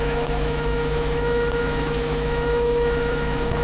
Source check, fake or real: fake